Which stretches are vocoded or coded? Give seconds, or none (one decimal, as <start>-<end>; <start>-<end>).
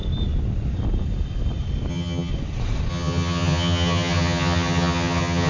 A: 1.9-2.3; 2.9-5.5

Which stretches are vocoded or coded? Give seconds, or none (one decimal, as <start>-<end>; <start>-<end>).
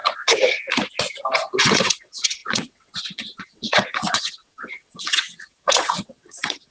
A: 1.6-6.7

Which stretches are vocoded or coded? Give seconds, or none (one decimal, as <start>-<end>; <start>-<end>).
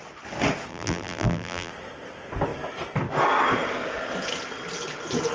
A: 0.7-1.7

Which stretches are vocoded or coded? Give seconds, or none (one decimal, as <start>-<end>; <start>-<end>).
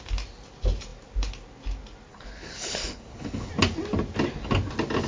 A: 2.1-3.5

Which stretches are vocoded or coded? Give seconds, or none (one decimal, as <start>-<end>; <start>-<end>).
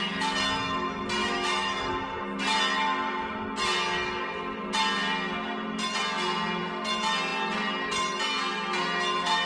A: 1.2-1.9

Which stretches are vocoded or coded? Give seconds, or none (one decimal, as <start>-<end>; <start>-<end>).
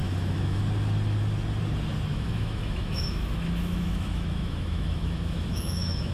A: 0.0-0.6; 2.1-6.1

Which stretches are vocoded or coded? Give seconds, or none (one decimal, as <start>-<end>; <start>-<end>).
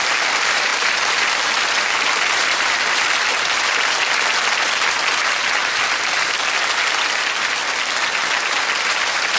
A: 0.0-0.7; 5.9-7.6; 8.8-9.4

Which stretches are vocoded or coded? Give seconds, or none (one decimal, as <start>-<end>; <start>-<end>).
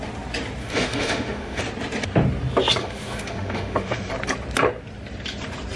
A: 0.6-1.6; 2.8-4.1